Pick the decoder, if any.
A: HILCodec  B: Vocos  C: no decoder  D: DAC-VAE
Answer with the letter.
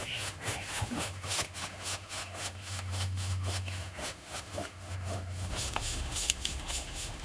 D